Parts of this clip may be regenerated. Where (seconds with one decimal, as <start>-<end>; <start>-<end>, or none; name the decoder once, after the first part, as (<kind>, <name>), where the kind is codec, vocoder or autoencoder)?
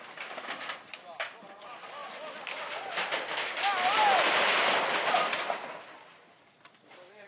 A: 0.0-2.0 (vocoder, BigVGAN v2); 5.2-7.3